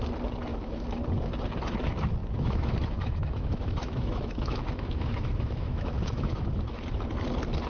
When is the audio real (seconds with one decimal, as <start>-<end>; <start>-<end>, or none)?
0.0-0.5; 1.0-2.2; 6.8-7.7